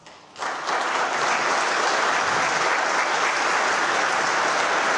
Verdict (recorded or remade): recorded